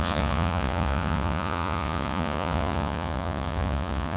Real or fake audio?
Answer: fake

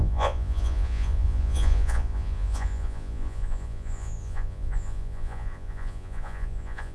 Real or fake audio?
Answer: fake